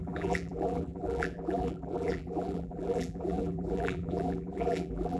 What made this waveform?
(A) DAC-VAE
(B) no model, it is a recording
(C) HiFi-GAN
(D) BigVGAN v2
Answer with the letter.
D